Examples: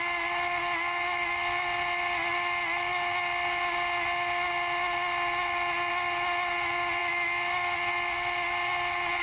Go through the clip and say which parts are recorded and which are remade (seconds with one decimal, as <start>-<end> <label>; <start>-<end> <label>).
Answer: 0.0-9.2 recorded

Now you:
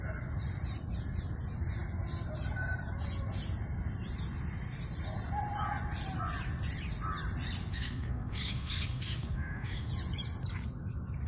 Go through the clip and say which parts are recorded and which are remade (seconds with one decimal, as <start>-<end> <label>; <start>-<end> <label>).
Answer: 0.0-7.7 recorded; 7.7-9.9 remade; 9.9-11.3 recorded

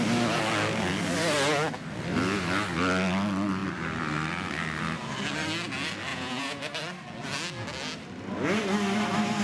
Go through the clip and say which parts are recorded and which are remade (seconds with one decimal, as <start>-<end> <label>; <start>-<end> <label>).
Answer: 0.0-6.1 recorded; 6.1-6.6 remade; 6.6-9.4 recorded